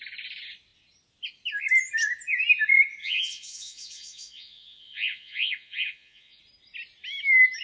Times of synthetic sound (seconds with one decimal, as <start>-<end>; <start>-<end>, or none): 3.0-6.4